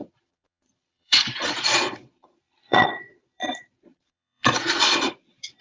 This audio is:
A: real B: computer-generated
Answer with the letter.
B